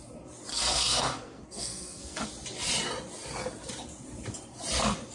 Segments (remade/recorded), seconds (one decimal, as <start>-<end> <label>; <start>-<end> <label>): 0.0-0.5 recorded; 0.5-2.3 remade; 2.3-5.1 recorded